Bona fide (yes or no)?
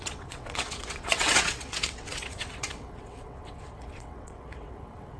no